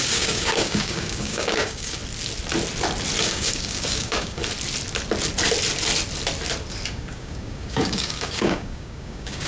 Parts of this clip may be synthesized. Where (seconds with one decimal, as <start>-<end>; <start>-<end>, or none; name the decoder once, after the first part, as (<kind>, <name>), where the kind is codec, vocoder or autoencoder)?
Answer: 0.0-2.0 (codec, DAC); 3.2-4.4; 6.9-9.5